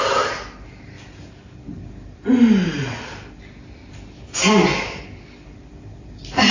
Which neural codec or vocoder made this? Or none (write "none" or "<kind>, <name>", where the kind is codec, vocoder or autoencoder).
none